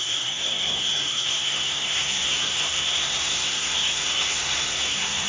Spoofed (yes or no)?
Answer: yes